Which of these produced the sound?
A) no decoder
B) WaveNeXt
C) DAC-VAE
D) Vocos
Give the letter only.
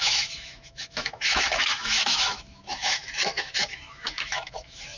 C